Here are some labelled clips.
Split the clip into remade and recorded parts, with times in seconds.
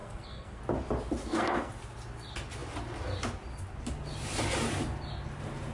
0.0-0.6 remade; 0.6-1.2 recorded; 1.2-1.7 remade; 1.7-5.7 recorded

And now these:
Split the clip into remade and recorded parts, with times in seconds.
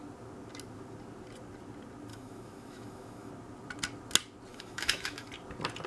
0.0-2.1 recorded; 2.1-3.3 remade; 3.3-4.5 recorded; 4.5-5.3 remade; 5.3-5.9 recorded